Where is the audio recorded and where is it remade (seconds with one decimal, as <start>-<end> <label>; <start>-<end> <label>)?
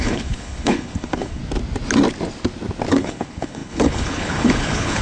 0.0-1.4 remade; 1.4-2.9 recorded; 2.9-5.0 remade